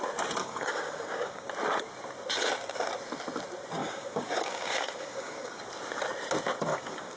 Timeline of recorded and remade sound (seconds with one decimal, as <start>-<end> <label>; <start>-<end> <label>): 0.0-0.4 recorded; 0.4-1.5 remade; 1.5-3.8 recorded; 3.8-5.6 remade; 5.6-6.7 recorded; 6.7-7.2 remade